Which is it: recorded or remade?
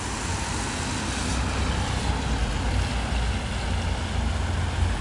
recorded